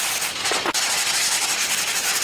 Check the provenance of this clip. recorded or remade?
recorded